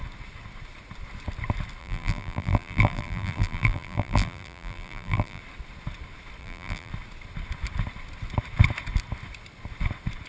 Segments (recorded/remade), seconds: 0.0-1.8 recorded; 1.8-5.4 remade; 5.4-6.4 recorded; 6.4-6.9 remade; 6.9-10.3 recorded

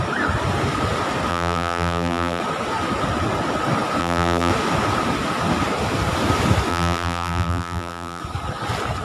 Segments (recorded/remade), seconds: 0.0-1.3 recorded; 1.3-2.4 remade; 2.4-4.0 recorded; 4.0-4.5 remade; 4.5-6.7 recorded; 6.7-8.2 remade; 8.2-9.0 recorded

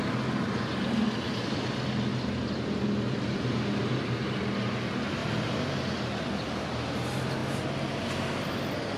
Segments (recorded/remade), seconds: 0.0-2.1 recorded; 2.1-2.8 remade; 2.8-9.0 recorded

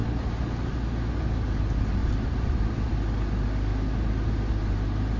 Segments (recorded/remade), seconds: 0.0-0.7 remade; 0.7-2.0 recorded; 2.0-2.9 remade; 2.9-5.2 recorded

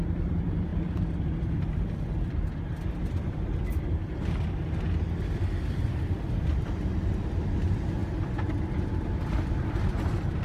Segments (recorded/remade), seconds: 0.0-4.0 remade; 4.0-5.1 recorded; 5.1-8.0 remade; 8.0-8.7 recorded; 8.7-10.4 remade

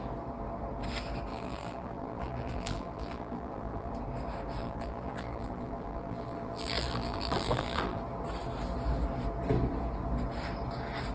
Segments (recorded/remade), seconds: 0.0-1.3 recorded; 1.3-3.9 remade; 3.9-4.6 recorded; 4.6-8.0 remade; 8.0-11.1 recorded

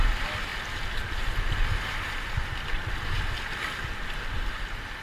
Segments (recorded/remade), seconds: 0.0-5.0 recorded

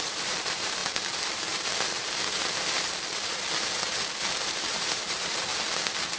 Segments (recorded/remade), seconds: 0.0-0.8 remade; 0.8-4.5 recorded; 4.5-5.5 remade; 5.5-6.2 recorded